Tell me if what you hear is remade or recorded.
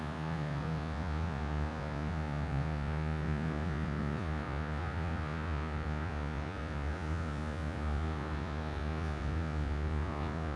remade